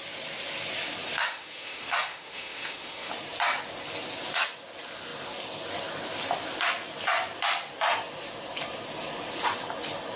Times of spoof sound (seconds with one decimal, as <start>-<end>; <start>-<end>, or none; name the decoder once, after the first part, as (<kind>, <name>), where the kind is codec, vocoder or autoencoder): 1.2-3.1 (autoencoder, DAC-VAE)